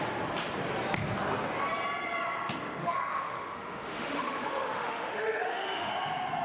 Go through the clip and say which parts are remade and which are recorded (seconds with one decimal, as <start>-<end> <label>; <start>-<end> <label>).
0.0-2.8 recorded; 2.8-5.9 remade; 5.9-6.4 recorded

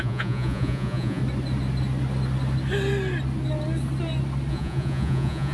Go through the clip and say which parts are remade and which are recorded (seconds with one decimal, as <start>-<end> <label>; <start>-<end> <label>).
0.0-1.2 remade; 1.2-4.5 recorded; 4.5-5.5 remade

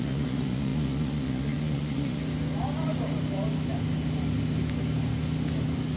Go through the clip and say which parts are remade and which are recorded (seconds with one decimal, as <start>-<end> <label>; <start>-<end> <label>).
0.0-2.2 remade; 2.2-6.0 recorded

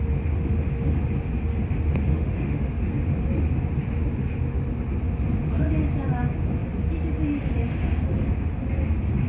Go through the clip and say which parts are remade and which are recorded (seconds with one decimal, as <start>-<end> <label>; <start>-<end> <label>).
0.0-2.1 recorded; 2.1-2.7 remade; 2.7-9.3 recorded

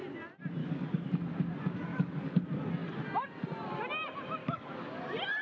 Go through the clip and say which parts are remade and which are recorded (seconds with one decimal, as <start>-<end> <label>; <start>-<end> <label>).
0.0-0.6 recorded; 0.6-1.1 remade; 1.1-1.9 recorded; 1.9-2.4 remade; 2.4-4.4 recorded; 4.4-5.0 remade; 5.0-5.4 recorded

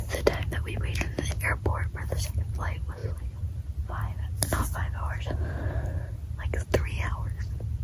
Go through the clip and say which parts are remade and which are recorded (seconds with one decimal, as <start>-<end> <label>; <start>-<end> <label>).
0.0-7.8 recorded

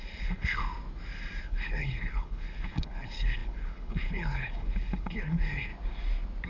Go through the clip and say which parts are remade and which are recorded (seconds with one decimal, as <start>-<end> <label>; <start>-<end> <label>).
0.0-0.6 remade; 0.6-1.4 recorded; 1.4-5.7 remade; 5.7-6.5 recorded

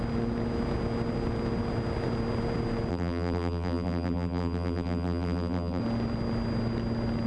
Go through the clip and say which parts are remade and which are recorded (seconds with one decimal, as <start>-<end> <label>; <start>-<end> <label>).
0.0-2.9 recorded; 2.9-5.8 remade; 5.8-7.3 recorded